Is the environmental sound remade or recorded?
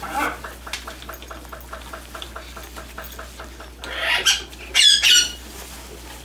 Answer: recorded